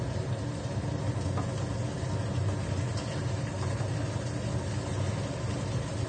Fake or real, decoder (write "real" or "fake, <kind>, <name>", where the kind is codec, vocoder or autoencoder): real